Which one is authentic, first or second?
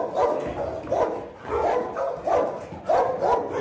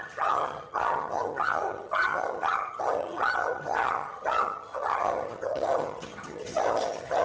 first